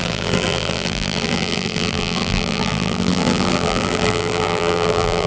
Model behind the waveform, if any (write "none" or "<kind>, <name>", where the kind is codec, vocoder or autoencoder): vocoder, BigVGAN v2